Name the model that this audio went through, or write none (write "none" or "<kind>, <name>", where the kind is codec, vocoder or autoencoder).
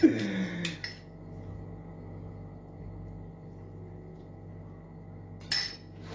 none